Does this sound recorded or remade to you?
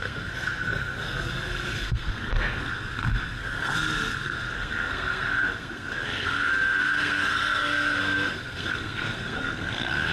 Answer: remade